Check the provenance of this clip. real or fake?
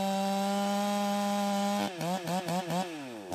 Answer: real